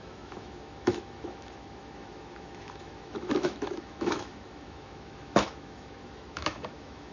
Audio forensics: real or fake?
fake